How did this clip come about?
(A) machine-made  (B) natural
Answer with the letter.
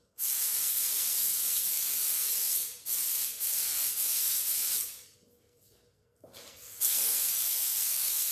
A